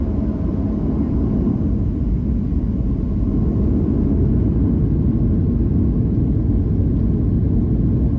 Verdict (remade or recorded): recorded